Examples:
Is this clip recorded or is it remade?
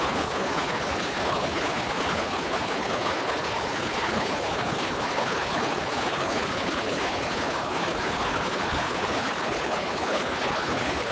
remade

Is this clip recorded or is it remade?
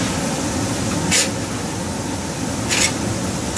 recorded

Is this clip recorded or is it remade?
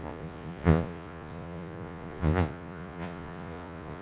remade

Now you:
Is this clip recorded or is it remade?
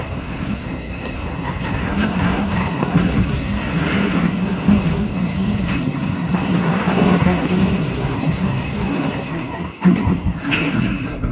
remade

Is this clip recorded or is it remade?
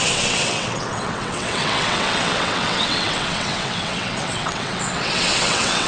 remade